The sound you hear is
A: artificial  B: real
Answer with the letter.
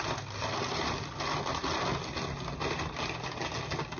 B